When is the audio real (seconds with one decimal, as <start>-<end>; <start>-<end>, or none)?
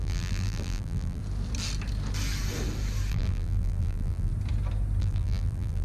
1.2-3.1; 4.3-5.0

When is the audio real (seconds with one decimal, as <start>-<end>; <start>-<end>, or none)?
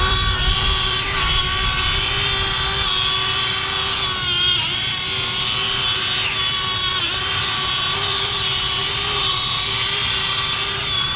1.4-6.5